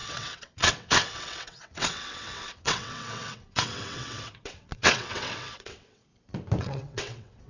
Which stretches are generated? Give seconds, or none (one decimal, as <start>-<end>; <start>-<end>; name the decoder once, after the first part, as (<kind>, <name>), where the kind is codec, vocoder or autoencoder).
0.0-6.1 (vocoder, WaveNeXt); 6.6-7.5